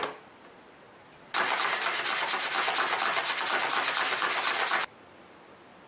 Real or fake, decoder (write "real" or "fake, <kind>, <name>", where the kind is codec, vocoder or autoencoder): real